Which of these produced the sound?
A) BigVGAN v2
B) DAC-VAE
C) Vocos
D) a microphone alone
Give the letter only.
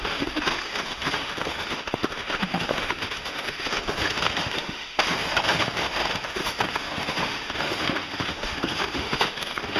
B